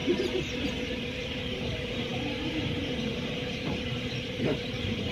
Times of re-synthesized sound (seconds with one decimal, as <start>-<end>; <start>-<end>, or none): 0.9-5.1